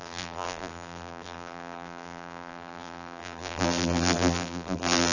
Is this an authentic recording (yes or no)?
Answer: no